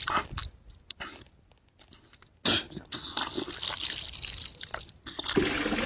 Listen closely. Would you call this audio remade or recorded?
recorded